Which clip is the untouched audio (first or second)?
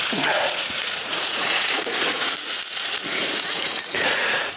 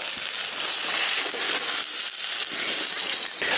second